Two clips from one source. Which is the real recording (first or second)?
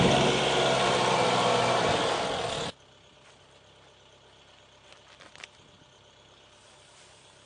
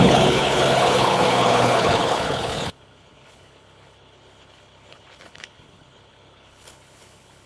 first